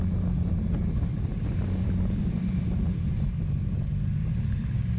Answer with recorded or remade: recorded